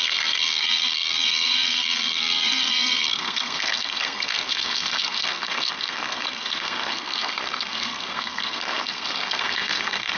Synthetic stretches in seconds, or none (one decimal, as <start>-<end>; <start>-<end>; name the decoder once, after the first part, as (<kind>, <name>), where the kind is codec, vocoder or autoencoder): 0.0-10.2 (codec, SNAC)